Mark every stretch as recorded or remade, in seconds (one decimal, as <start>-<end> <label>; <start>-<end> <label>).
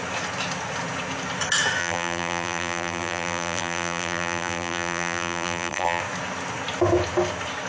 0.0-1.8 recorded; 1.8-6.0 remade; 6.0-7.7 recorded